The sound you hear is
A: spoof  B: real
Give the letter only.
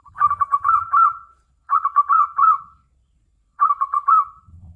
A